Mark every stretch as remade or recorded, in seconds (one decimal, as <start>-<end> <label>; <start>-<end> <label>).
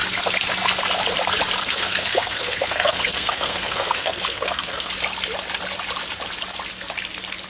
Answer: 0.0-1.6 recorded; 1.6-4.9 remade; 4.9-7.5 recorded